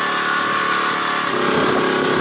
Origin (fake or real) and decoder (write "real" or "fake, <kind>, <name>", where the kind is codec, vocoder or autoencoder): real